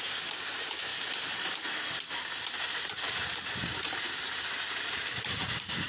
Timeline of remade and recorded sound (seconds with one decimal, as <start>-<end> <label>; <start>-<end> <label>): 0.0-0.9 remade; 0.9-2.5 recorded; 2.5-5.9 remade